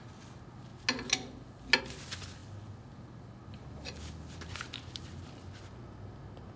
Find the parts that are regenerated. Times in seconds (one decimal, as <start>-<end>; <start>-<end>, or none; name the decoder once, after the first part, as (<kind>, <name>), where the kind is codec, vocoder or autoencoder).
none